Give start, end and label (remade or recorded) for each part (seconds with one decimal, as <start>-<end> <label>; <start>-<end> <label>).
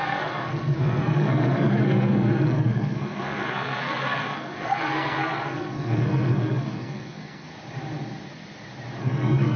0.0-7.5 remade; 7.5-9.0 recorded; 9.0-9.6 remade